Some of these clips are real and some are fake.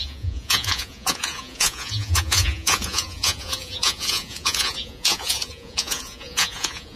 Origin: fake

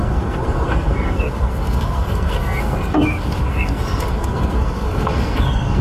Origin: fake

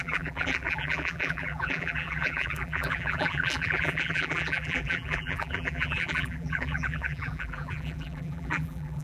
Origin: fake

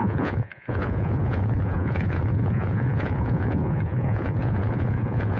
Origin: fake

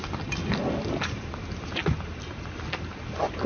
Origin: real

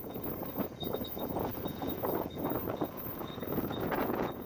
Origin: fake